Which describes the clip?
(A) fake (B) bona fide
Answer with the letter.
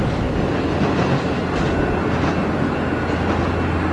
B